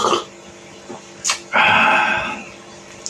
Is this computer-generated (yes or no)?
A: no